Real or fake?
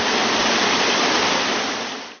real